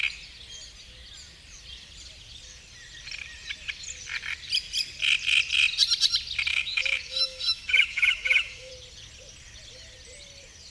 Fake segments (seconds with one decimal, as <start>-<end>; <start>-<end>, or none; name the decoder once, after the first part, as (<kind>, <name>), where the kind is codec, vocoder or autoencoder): 6.5-8.7 (autoencoder, DAC-VAE)